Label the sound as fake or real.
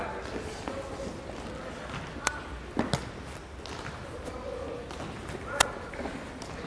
real